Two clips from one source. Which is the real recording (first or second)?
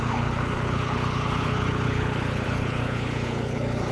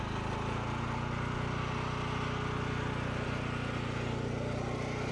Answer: second